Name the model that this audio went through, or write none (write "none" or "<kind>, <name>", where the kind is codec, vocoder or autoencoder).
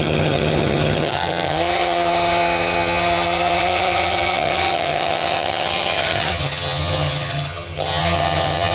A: vocoder, HiFi-GAN